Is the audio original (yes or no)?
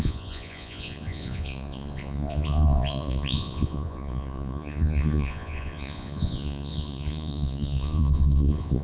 no